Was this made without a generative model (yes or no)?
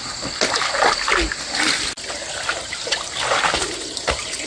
yes